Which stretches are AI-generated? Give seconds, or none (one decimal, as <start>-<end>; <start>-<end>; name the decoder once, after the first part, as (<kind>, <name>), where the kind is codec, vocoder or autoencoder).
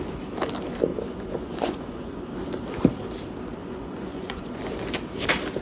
0.9-2.3 (vocoder, Vocos); 3.6-4.6